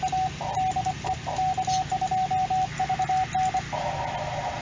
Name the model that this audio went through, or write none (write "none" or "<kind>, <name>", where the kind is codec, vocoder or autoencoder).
none